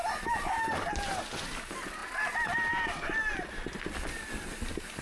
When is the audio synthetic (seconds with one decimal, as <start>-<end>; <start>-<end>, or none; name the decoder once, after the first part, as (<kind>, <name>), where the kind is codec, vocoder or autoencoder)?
none